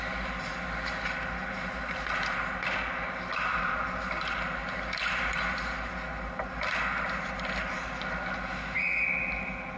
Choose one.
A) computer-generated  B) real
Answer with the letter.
B